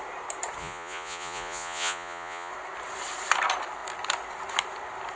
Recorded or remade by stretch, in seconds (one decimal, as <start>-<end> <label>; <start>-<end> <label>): 0.0-0.6 recorded; 0.6-2.5 remade; 2.5-5.2 recorded